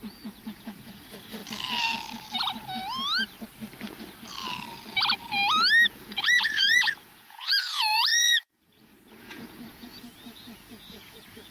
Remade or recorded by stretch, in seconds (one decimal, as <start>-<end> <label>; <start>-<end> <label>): 0.0-1.4 remade; 1.4-5.9 recorded; 5.9-11.5 remade